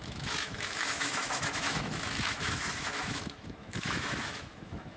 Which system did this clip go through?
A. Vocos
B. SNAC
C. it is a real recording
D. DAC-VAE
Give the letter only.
D